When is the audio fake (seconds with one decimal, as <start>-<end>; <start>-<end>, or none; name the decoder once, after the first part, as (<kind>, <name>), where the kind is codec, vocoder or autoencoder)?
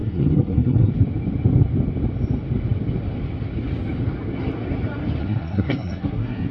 0.0-0.9 (codec, SNAC); 5.2-6.5